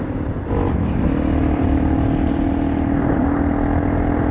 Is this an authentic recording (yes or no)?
no